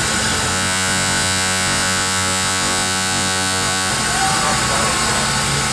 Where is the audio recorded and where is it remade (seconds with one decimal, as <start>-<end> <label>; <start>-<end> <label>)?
0.0-0.5 recorded; 0.5-3.9 remade; 3.9-5.7 recorded